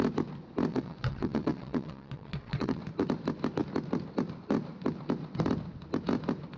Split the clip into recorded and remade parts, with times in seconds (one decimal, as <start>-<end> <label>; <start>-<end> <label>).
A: 0.0-0.7 recorded; 0.7-2.8 remade; 2.8-6.6 recorded